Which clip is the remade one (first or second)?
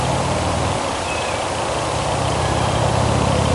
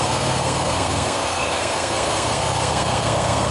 second